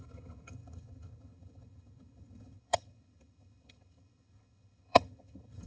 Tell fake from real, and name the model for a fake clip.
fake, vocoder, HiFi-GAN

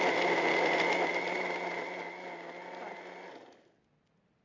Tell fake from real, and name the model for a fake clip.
real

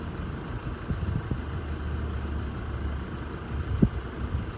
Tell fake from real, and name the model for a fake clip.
real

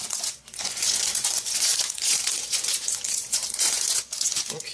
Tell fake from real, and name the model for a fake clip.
fake, vocoder, Vocos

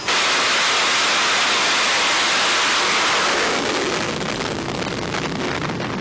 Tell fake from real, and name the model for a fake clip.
real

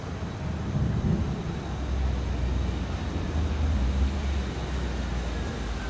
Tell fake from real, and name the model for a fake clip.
real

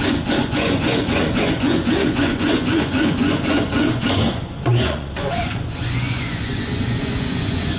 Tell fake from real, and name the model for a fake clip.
fake, vocoder, Vocos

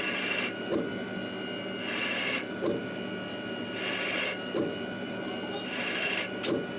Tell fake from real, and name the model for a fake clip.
real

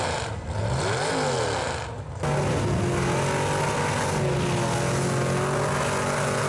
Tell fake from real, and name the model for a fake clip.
real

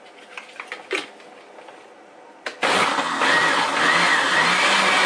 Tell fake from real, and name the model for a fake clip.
real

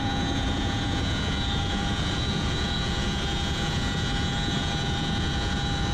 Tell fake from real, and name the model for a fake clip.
fake, vocoder, Vocos